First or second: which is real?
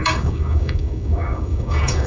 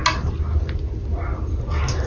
second